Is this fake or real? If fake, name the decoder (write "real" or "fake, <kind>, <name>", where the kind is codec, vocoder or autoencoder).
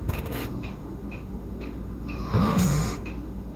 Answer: fake, autoencoder, DAC-VAE